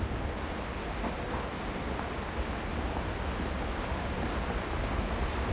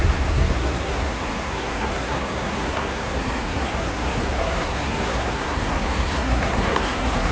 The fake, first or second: second